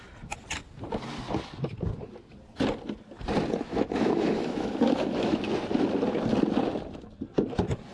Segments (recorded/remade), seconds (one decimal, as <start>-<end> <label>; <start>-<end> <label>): 0.0-3.7 recorded; 3.7-5.4 remade; 5.4-7.9 recorded